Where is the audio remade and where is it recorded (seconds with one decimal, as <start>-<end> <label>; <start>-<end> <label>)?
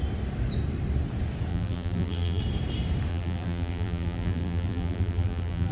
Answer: 0.0-1.5 recorded; 1.5-2.4 remade; 2.4-3.1 recorded; 3.1-5.7 remade